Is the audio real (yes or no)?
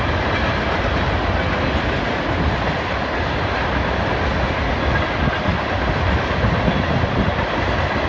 yes